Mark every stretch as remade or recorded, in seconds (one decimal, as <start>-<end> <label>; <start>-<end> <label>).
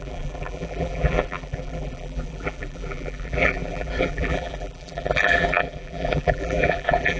0.0-7.2 remade